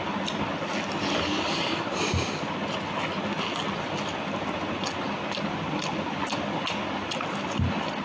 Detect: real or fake real